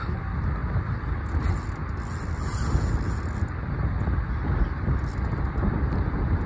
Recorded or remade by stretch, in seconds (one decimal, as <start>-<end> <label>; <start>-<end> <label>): 0.0-6.5 recorded

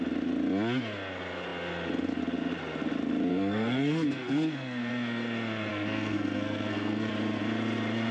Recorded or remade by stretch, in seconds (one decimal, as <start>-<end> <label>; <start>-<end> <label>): 0.0-3.3 recorded; 3.3-4.9 remade; 4.9-5.7 recorded; 5.7-7.1 remade; 7.1-8.1 recorded

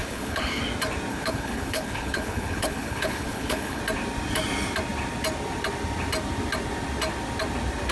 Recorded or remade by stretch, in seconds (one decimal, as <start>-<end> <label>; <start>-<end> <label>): 0.0-0.6 remade; 0.6-1.1 recorded; 1.1-3.8 remade; 3.8-7.9 recorded

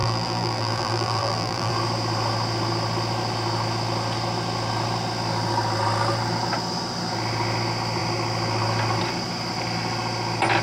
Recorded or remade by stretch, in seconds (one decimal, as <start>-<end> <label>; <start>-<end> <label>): 0.0-1.7 remade; 1.7-10.6 recorded

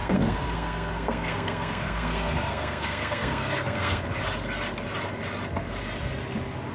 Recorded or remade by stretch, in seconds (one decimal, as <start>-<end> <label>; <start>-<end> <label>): 0.0-4.0 remade; 4.0-6.7 recorded

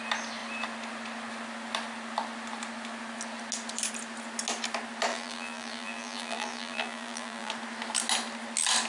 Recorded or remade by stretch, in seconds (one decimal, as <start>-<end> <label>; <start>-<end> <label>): 0.0-5.1 recorded; 5.1-7.5 remade; 7.5-8.9 recorded

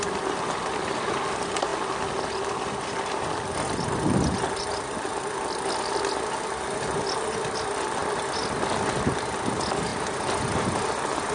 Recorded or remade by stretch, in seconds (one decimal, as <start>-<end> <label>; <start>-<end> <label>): 0.0-11.3 recorded